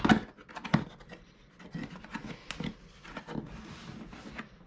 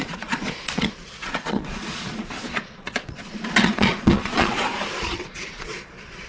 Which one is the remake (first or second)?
second